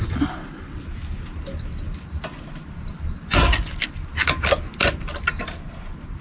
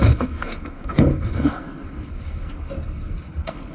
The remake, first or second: second